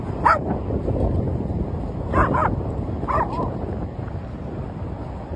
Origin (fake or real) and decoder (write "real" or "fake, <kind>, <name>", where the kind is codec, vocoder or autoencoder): real